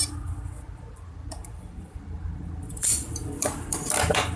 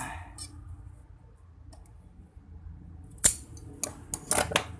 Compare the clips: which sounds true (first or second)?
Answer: second